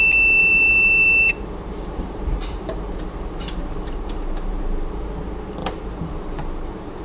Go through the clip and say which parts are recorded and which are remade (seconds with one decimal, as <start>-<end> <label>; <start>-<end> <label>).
0.0-0.4 recorded; 0.4-3.0 remade; 3.0-3.6 recorded; 3.6-5.1 remade; 5.1-5.6 recorded; 5.6-7.0 remade